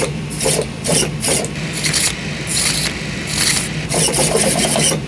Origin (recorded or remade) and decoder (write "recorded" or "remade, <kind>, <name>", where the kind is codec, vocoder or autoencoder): recorded